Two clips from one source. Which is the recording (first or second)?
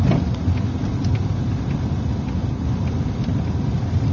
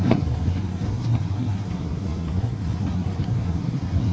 first